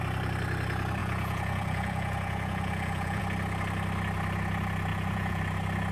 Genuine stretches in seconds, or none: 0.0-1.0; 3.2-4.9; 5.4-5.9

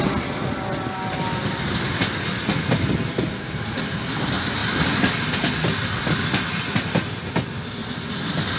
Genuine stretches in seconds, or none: 0.0-8.6

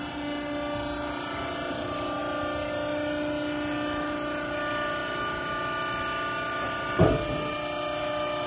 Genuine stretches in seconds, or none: 0.0-8.5

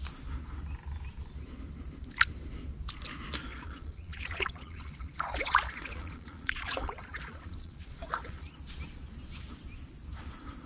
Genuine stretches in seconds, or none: 0.0-3.5; 8.6-10.7

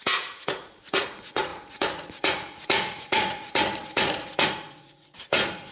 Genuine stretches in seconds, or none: none

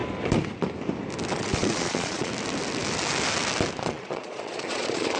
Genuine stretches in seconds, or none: 0.0-1.3; 2.3-3.9

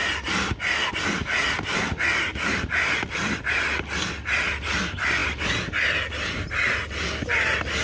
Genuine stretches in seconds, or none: 0.0-7.8

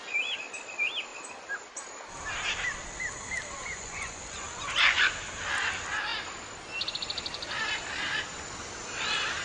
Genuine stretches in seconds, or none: 0.0-3.6; 5.1-9.4